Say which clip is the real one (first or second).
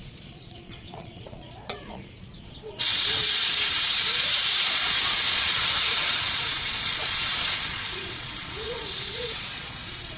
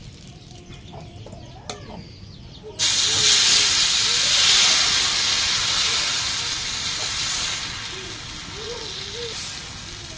second